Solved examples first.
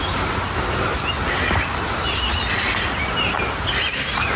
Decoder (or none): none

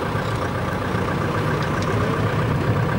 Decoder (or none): none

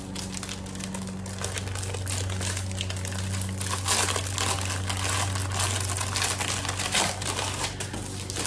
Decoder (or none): none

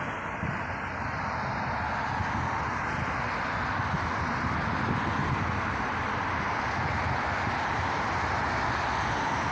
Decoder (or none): none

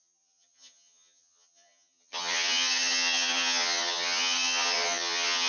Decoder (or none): vocoder, HiFi-GAN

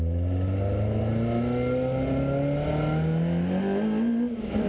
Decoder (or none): none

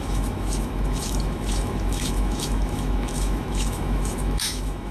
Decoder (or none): autoencoder, DAC-VAE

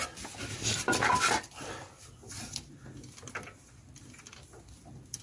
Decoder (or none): none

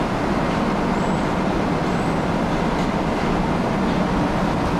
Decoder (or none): none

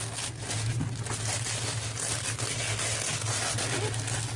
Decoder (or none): none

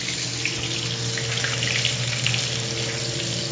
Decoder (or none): none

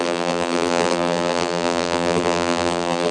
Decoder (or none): vocoder, BigVGAN v2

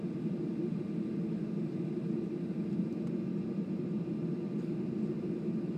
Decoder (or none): none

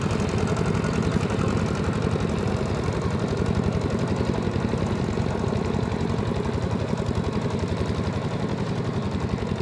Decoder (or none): none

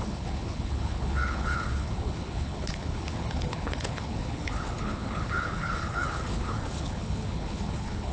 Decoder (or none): codec, HILCodec